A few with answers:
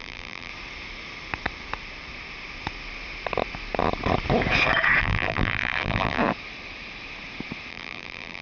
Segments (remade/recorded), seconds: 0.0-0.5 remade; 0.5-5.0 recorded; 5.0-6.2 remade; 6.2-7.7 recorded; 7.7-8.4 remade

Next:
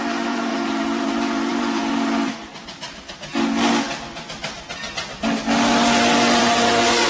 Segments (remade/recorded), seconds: 0.0-2.5 remade; 2.5-6.4 recorded; 6.4-7.1 remade

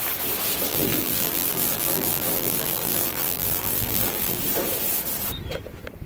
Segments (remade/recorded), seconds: 0.0-0.7 recorded; 0.7-4.4 remade; 4.4-6.1 recorded